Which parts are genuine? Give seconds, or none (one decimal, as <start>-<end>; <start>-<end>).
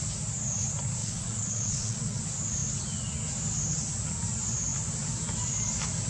0.0-1.0; 2.2-6.1